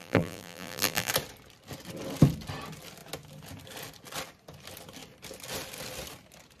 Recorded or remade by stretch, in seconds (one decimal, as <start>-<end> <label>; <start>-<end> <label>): 0.0-1.1 remade; 1.1-6.6 recorded